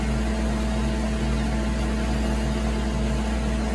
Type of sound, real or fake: real